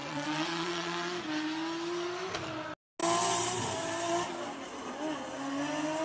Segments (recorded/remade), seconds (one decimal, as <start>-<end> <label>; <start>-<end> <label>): 0.0-1.2 remade; 1.2-6.0 recorded